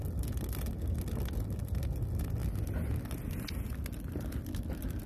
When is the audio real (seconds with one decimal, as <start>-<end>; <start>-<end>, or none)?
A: 0.0-5.1